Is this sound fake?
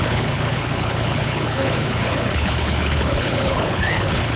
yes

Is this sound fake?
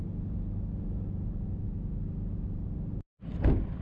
no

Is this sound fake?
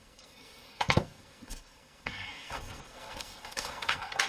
yes